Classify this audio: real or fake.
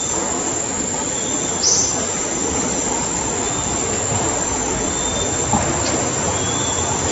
real